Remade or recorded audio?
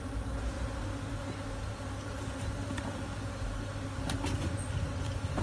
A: recorded